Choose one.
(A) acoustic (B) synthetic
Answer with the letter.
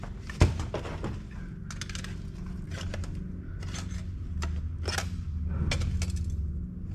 A